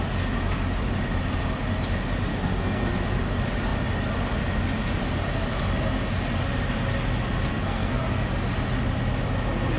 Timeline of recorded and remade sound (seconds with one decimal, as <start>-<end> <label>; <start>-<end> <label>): 0.0-2.3 recorded; 2.3-2.9 remade; 2.9-7.5 recorded; 7.5-8.0 remade; 8.0-9.8 recorded